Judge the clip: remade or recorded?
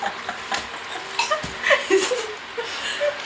recorded